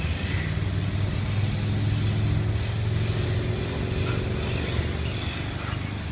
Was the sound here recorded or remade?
recorded